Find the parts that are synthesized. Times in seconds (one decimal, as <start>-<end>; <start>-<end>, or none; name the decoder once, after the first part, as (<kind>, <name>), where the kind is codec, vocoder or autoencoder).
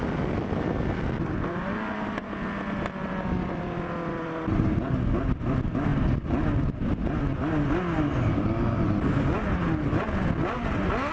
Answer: none